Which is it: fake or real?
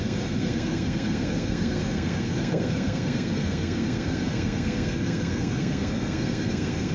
fake